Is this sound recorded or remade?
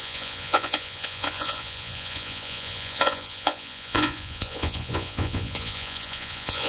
remade